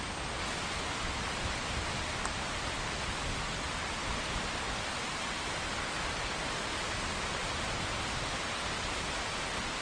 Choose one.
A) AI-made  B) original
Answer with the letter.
B